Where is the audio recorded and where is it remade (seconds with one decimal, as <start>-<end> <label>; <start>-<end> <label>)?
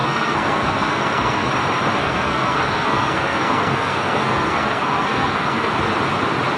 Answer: 0.0-1.5 remade; 1.5-2.0 recorded; 2.0-5.7 remade; 5.7-6.6 recorded